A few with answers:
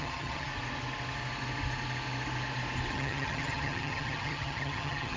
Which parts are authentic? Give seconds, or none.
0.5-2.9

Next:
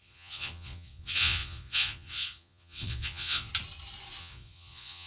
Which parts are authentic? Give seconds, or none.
3.5-4.2

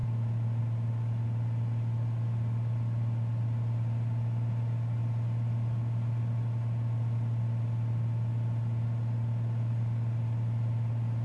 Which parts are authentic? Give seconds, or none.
0.0-11.2

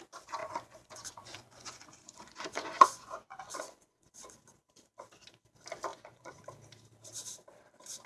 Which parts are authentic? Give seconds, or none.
0.0-0.4; 4.1-5.9; 6.4-8.1

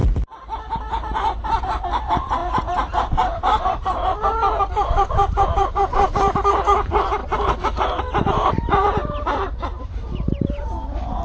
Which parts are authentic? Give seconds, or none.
0.0-1.6